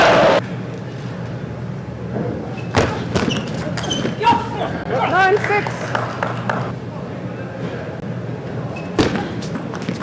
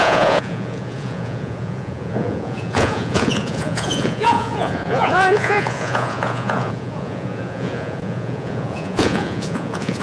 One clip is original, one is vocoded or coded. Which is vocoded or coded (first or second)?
second